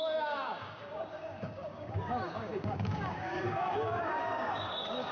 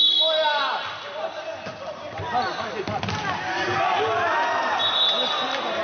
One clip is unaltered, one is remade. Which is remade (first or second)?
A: first